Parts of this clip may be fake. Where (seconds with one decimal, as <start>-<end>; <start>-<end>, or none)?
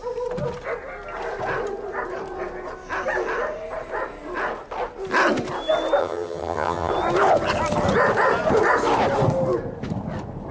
6.0-6.9